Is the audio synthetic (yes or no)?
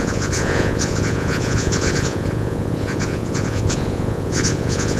yes